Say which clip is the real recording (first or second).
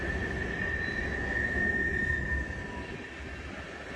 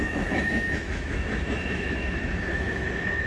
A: first